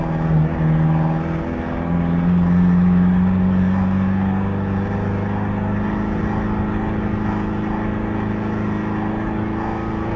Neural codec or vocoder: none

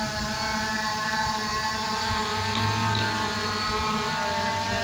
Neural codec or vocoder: none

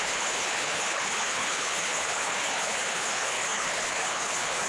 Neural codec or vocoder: codec, HILCodec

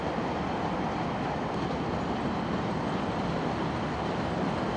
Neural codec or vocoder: none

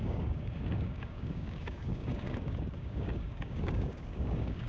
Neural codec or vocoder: codec, DAC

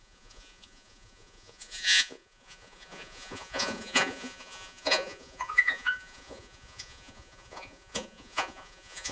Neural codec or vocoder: vocoder, Vocos